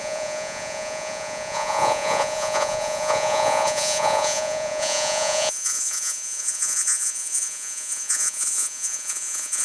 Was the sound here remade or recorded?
remade